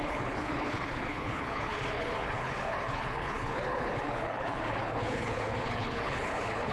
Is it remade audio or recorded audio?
remade